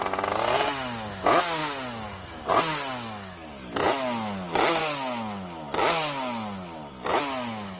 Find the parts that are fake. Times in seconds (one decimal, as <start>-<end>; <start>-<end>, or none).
none